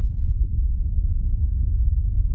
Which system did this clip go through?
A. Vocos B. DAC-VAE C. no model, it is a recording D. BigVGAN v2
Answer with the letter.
D